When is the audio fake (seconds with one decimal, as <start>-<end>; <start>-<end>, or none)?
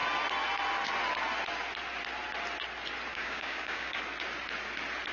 3.1-4.0